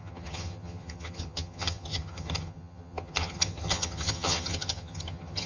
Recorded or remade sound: remade